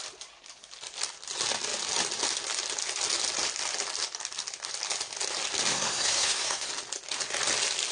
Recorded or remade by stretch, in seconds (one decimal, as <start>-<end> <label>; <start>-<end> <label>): 0.0-5.7 recorded; 5.7-6.7 remade; 6.7-7.9 recorded